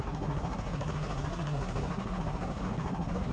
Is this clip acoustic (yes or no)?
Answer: no